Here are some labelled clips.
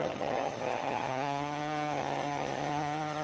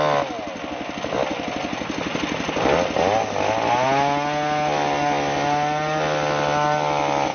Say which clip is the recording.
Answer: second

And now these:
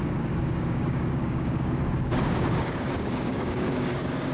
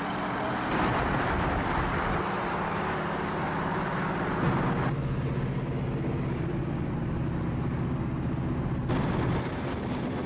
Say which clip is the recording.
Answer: second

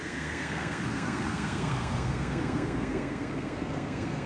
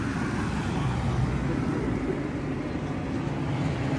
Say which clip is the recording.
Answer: second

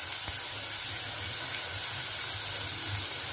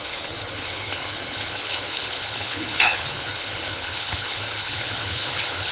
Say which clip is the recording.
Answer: first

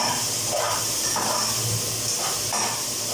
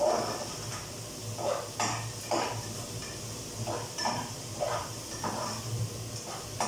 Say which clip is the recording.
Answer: first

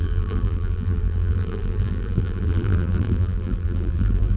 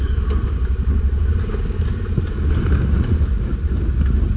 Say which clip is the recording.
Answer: second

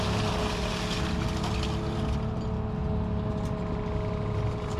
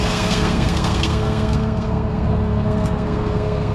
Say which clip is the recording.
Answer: first